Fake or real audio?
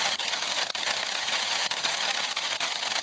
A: fake